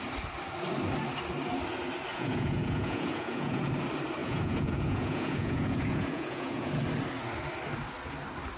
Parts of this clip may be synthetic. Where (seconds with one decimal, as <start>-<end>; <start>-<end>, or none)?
2.1-3.6; 4.2-6.7